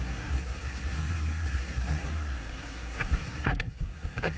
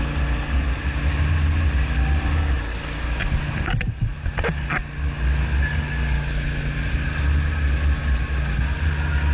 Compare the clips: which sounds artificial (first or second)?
first